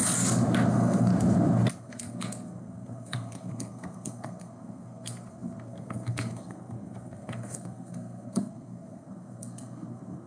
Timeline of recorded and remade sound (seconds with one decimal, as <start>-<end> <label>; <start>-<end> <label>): 0.0-0.7 recorded; 0.7-1.1 remade; 1.1-1.8 recorded; 1.8-10.3 remade